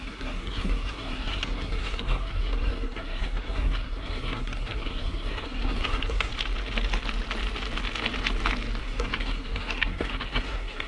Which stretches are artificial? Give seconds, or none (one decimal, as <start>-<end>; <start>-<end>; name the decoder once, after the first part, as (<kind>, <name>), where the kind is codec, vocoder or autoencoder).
0.0-6.3 (codec, SNAC); 8.8-10.9